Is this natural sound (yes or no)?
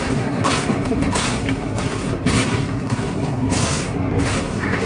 no